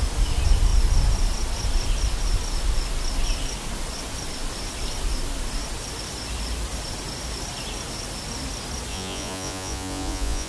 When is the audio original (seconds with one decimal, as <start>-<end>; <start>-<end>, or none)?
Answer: 0.0-8.9